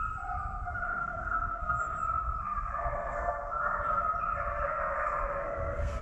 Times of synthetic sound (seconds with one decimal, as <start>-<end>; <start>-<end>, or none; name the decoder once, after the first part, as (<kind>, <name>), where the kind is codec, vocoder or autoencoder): 1.0-1.8 (codec, SNAC); 2.4-3.8; 4.5-6.0